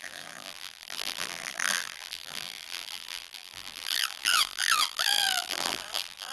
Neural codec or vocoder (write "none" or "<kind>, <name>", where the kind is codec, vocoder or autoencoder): vocoder, BigVGAN v2